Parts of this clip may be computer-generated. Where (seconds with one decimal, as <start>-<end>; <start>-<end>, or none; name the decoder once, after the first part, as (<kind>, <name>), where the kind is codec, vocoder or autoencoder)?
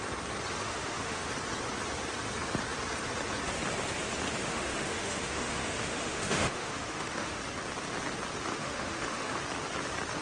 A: 0.6-1.3 (autoencoder, DAC-VAE); 4.4-7.4; 8.5-9.4